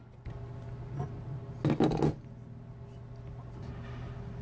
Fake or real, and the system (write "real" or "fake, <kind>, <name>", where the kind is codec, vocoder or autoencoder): real